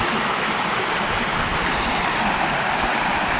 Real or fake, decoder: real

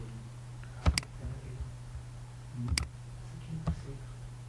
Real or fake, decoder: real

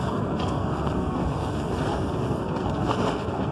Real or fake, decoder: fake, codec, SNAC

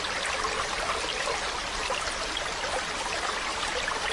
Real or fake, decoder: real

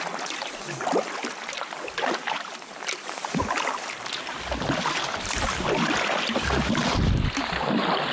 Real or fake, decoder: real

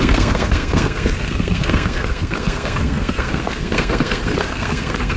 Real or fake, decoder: fake, codec, SNAC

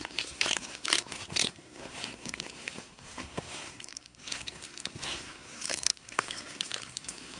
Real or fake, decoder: fake, codec, SNAC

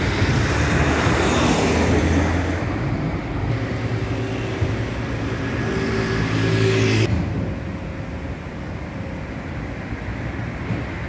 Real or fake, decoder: real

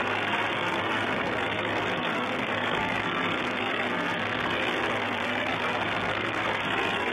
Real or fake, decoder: fake, codec, SNAC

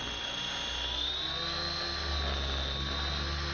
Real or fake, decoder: real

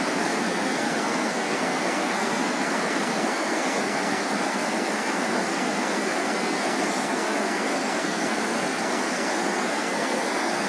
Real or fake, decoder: fake, codec, SNAC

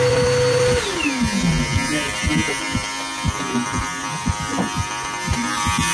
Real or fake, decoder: real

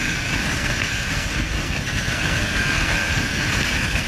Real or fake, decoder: fake, codec, SNAC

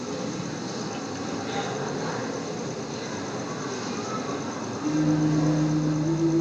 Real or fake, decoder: real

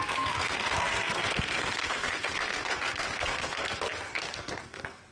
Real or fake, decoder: fake, codec, SNAC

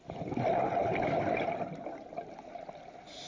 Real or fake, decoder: real